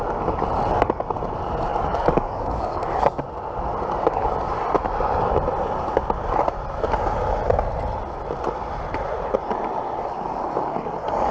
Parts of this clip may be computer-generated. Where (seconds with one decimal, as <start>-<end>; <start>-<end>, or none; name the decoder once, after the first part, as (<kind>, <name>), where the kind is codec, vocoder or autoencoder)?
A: 1.7-3.0 (codec, DAC)